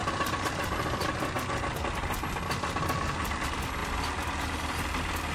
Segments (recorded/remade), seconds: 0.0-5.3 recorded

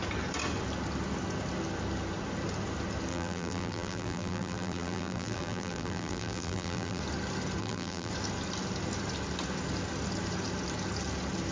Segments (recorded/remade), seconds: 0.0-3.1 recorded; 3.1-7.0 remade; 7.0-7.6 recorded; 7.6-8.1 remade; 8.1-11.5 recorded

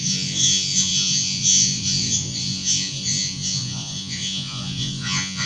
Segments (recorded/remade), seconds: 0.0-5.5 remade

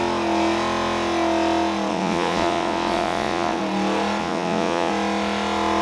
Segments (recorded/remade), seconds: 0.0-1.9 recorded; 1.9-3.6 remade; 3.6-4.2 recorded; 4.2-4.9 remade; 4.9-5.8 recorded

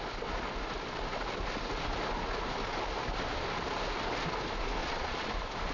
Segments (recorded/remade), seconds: 0.0-4.8 recorded; 4.8-5.3 remade; 5.3-5.7 recorded